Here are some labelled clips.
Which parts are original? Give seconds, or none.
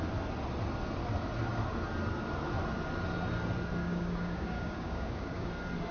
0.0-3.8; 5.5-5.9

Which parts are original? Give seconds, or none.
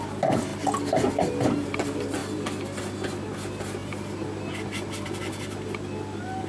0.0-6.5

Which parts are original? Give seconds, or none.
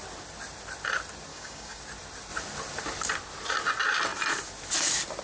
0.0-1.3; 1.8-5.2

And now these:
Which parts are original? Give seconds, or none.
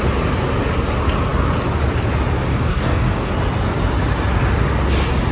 0.0-2.5; 3.3-5.3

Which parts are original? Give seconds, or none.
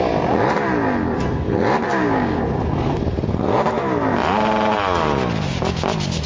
0.0-1.9; 2.4-6.3